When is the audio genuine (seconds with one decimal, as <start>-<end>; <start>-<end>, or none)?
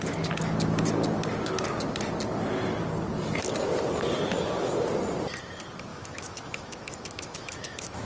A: 0.0-5.9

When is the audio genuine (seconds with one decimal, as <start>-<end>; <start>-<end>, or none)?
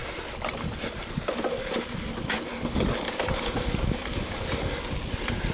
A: 0.0-5.5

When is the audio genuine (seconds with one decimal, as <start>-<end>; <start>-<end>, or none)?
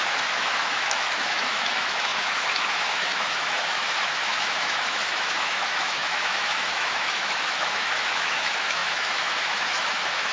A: none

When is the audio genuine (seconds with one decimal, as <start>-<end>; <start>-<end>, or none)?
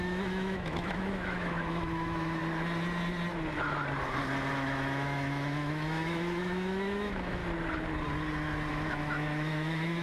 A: 2.4-4.5; 7.4-8.7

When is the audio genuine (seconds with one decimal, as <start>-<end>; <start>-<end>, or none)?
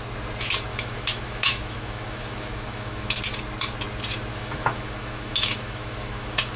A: 0.0-0.7; 3.2-4.3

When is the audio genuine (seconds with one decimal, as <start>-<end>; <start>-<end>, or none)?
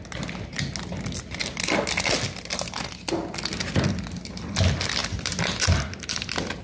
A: 0.0-6.6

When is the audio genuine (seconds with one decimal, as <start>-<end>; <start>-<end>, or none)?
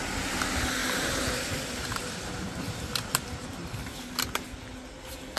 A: 0.0-5.4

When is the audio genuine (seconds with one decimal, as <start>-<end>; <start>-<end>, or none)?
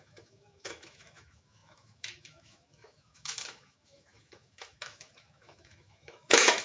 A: none